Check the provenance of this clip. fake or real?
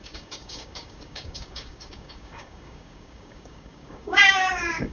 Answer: fake